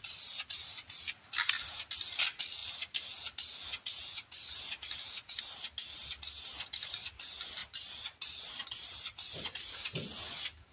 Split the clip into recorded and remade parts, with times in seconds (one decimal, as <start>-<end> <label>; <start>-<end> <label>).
0.0-10.7 recorded